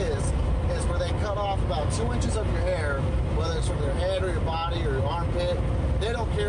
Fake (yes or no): no